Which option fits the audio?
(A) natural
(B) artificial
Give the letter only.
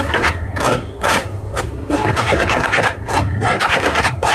B